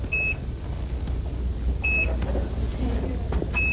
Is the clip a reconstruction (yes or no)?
no